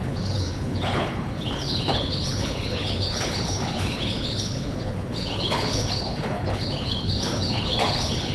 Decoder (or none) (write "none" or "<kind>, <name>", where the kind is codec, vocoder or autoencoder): codec, HILCodec